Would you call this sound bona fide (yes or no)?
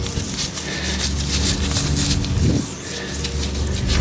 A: yes